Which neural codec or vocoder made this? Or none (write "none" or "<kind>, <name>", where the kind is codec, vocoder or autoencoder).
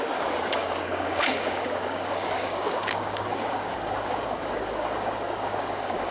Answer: codec, DAC